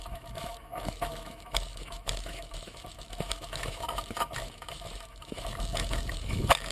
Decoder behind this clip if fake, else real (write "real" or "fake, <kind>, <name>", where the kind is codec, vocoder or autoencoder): fake, autoencoder, DAC-VAE